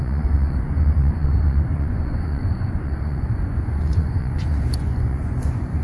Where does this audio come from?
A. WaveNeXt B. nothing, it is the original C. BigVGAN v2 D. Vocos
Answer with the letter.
D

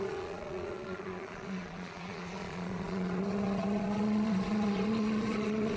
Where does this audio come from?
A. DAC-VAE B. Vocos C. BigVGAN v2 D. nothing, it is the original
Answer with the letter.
B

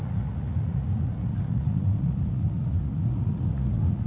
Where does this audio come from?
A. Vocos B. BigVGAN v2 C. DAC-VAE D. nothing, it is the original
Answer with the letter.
A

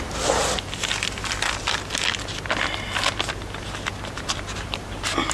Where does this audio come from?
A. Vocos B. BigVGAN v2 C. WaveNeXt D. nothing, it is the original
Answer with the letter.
D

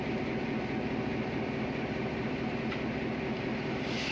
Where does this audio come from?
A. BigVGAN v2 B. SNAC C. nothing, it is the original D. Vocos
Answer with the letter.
C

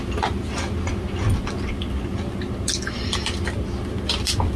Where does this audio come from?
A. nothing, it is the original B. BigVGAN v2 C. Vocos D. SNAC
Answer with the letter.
A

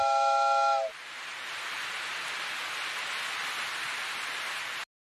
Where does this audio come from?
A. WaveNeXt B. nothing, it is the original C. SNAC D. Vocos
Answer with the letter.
B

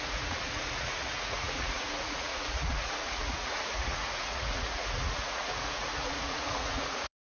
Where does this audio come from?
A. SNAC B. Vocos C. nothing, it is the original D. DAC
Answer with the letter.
B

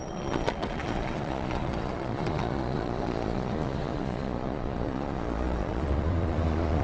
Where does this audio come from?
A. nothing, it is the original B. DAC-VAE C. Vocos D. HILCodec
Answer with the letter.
C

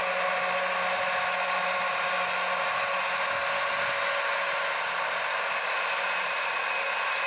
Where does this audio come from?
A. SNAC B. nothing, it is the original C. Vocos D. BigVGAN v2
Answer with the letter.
B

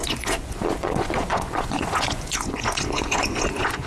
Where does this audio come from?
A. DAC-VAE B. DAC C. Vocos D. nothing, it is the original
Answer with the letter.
C